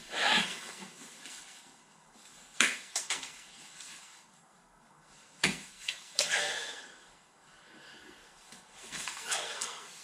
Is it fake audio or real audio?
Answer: fake